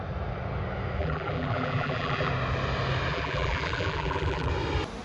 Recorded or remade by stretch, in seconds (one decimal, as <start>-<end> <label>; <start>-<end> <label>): 0.0-1.0 recorded; 1.0-2.3 remade; 2.3-3.1 recorded; 3.1-4.5 remade; 4.5-5.0 recorded